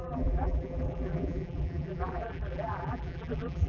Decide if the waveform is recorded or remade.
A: remade